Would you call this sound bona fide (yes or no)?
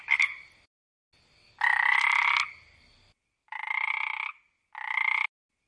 yes